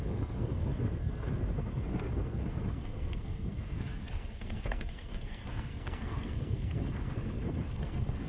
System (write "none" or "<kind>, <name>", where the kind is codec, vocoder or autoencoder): codec, SNAC